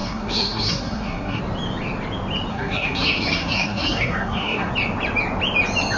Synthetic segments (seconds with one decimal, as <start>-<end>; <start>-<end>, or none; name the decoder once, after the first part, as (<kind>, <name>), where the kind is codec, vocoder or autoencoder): 0.0-1.4 (codec, SNAC); 2.5-4.7